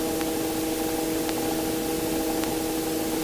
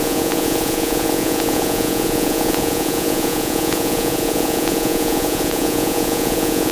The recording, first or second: first